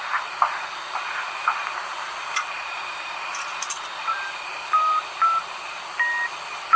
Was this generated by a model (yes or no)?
no